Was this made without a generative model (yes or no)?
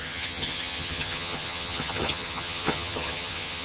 no